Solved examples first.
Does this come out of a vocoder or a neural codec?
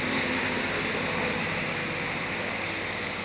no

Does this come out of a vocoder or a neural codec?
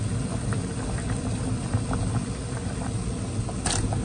no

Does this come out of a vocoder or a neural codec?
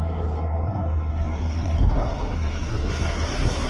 yes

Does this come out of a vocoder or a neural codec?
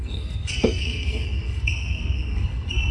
yes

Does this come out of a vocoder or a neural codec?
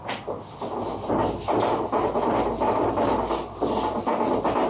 no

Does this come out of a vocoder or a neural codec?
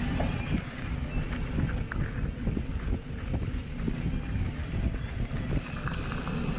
no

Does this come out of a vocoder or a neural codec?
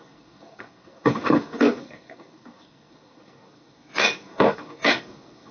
yes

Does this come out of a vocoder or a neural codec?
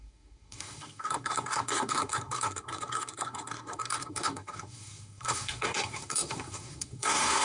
yes